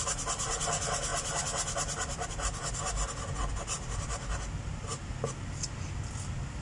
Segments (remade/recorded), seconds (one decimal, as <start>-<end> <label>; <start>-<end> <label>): 0.0-6.6 recorded